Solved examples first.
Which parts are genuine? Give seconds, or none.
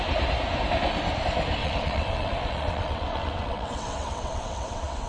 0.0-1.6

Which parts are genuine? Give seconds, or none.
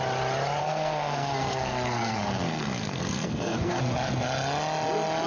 0.0-0.6; 3.8-5.3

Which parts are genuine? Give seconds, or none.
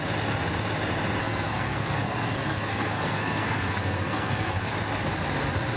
0.0-1.2; 4.7-5.8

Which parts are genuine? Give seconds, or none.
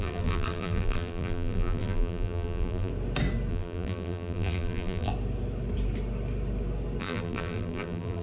2.9-3.5; 5.1-7.0